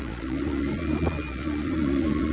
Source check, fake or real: fake